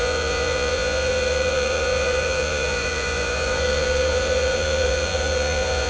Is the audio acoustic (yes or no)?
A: no